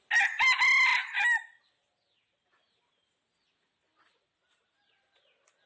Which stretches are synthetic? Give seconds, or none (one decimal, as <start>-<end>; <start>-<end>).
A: none

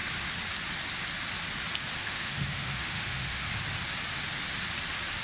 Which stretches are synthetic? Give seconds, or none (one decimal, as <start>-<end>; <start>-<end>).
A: 2.0-3.5

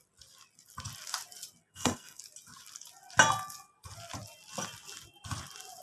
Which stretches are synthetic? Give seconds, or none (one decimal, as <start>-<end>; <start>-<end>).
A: 1.6-2.2

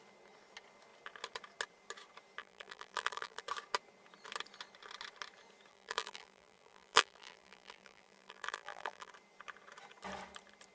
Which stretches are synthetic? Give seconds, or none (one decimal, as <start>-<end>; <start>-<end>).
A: 2.4-3.4; 5.7-9.1

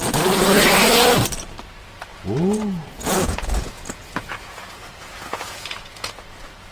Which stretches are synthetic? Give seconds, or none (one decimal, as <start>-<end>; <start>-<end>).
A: 2.1-6.1